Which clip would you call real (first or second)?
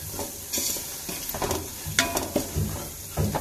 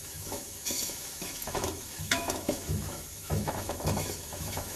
first